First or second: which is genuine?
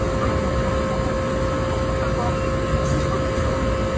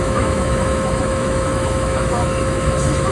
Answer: first